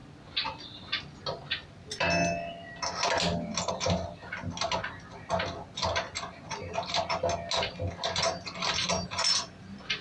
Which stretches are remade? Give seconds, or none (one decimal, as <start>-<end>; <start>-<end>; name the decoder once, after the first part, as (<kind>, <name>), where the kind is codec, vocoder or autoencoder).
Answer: none